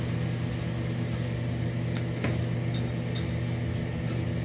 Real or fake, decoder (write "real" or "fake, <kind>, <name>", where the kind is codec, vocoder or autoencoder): real